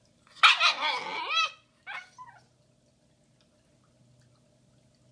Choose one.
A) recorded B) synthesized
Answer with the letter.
A